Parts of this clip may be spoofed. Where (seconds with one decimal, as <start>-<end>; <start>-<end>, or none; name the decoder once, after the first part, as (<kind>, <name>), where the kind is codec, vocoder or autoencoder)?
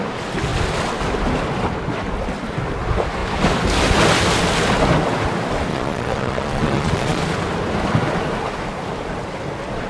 5.7-7.2 (vocoder, Vocos)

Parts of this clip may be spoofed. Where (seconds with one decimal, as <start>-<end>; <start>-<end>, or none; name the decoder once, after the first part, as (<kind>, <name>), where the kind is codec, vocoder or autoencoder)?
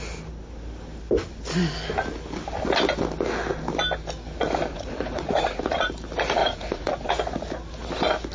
4.7-5.9 (vocoder, Vocos); 6.4-7.1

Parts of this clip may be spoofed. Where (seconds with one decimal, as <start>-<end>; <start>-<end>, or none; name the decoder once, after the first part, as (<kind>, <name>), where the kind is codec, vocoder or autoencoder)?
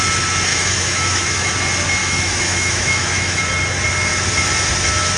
0.5-1.5 (autoencoder, DAC-VAE); 2.0-3.4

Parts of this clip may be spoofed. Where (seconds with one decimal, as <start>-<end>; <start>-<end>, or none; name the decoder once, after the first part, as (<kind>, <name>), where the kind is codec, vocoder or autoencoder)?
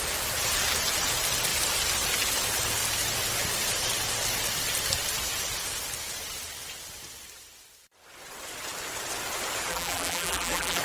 9.7-10.8 (vocoder, BigVGAN v2)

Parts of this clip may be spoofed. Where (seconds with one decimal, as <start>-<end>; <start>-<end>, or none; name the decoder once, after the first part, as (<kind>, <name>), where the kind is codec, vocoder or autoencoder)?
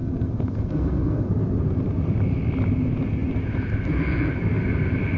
0.0-1.3 (codec, SNAC)